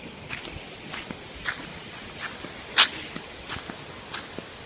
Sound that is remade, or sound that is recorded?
recorded